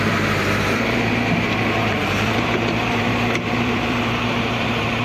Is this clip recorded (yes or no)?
no